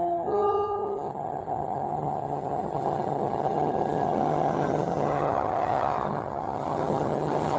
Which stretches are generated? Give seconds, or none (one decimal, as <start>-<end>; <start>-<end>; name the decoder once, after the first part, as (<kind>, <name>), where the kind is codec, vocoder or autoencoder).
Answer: 0.0-7.6 (vocoder, HiFi-GAN)